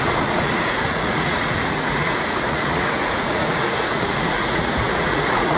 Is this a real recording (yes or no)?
no